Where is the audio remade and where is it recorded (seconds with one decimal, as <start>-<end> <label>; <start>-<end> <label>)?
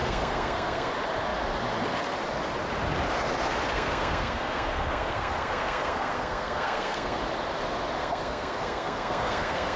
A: 0.0-0.9 remade; 0.9-3.7 recorded; 3.7-7.2 remade; 7.2-8.0 recorded; 8.0-9.8 remade